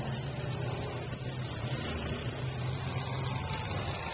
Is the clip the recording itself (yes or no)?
yes